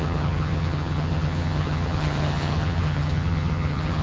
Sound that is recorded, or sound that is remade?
remade